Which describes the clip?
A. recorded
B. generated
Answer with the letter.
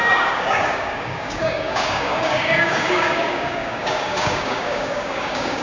B